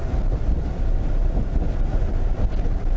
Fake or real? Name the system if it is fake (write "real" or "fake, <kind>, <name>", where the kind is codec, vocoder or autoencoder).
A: real